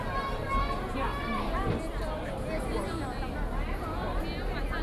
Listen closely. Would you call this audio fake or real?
real